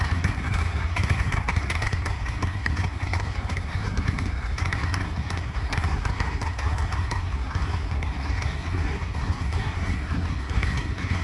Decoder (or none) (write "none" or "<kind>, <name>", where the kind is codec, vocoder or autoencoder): codec, SNAC